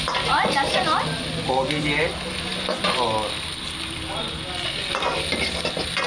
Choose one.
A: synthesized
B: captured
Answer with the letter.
B